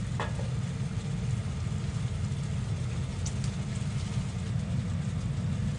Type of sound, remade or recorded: recorded